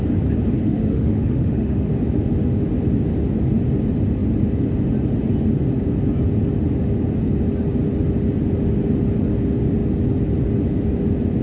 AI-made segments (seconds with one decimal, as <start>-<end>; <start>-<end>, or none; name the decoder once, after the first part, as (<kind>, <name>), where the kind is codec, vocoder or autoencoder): 0.6-1.9 (autoencoder, DAC-VAE)